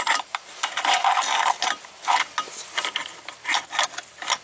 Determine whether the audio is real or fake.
real